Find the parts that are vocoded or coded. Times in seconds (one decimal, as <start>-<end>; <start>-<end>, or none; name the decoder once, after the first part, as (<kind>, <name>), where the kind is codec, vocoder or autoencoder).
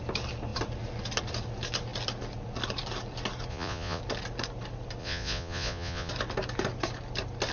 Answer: 3.5-4.0 (vocoder, Vocos); 5.0-6.1